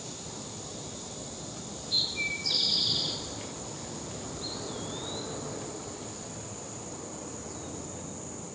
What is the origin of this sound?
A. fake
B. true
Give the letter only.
B